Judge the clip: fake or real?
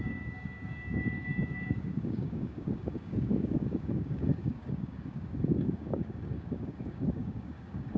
fake